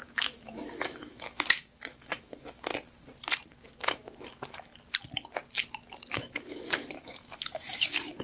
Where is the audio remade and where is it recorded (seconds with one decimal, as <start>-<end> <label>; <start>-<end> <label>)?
0.0-2.7 remade; 2.7-3.5 recorded; 3.5-4.7 remade; 4.7-6.1 recorded; 6.1-8.2 remade